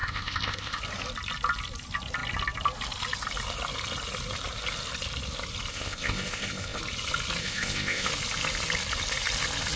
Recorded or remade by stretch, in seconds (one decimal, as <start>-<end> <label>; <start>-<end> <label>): 0.0-0.8 remade; 0.8-5.7 recorded; 5.7-6.8 remade; 6.8-7.4 recorded; 7.4-8.1 remade; 8.1-9.8 recorded